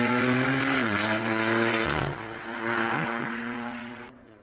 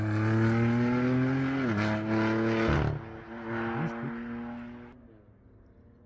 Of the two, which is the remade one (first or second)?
first